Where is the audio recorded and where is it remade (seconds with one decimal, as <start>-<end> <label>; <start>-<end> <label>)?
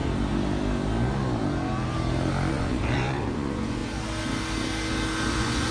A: 0.0-2.5 recorded; 2.5-3.8 remade; 3.8-5.3 recorded; 5.3-5.7 remade